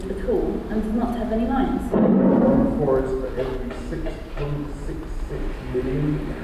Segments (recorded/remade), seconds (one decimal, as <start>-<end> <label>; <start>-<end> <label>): 0.0-6.4 recorded